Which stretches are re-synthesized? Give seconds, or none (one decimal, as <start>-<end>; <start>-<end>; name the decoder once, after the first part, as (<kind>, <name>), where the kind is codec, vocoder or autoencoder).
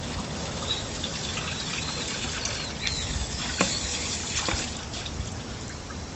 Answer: 0.0-1.1 (autoencoder, DAC-VAE); 2.9-4.2